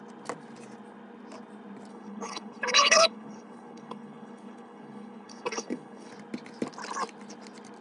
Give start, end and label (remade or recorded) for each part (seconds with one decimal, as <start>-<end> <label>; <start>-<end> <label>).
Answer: 0.0-1.9 recorded; 1.9-6.1 remade; 6.1-7.8 recorded